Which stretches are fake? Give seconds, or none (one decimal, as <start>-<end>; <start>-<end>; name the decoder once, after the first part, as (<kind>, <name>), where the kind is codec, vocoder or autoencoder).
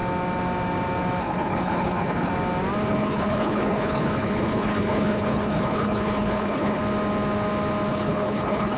1.2-2.3 (codec, HILCodec); 2.9-6.8; 7.9-8.8